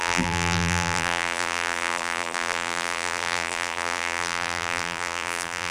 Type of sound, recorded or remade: remade